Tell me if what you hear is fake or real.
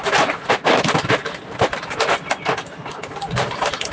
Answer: real